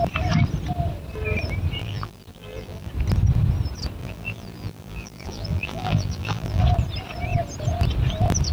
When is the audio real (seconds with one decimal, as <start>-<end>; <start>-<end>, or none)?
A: 0.0-1.8; 2.9-4.0; 6.6-8.5